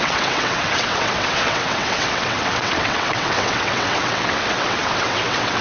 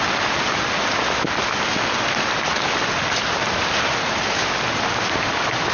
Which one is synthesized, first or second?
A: first